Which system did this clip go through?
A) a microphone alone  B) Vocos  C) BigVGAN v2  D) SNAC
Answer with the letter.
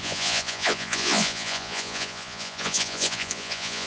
B